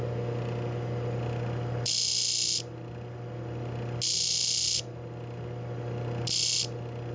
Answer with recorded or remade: recorded